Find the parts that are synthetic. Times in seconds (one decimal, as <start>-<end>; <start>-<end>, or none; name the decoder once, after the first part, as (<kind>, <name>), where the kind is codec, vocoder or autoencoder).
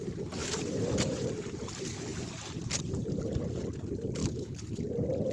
4.2-4.8 (codec, HILCodec)